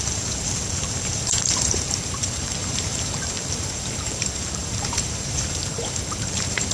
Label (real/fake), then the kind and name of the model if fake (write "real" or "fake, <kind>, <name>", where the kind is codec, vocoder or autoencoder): fake, vocoder, BigVGAN v2